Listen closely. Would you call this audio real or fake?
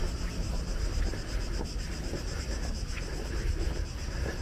real